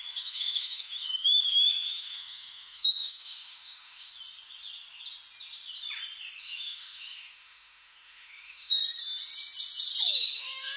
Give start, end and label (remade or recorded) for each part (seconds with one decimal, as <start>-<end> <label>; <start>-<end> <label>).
0.0-4.1 remade; 4.1-6.4 recorded; 6.4-8.8 remade; 8.8-10.4 recorded; 10.4-10.8 remade